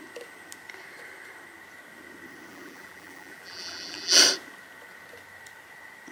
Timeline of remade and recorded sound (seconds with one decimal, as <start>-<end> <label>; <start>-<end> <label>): 0.0-2.5 recorded; 2.5-4.2 remade; 4.2-6.1 recorded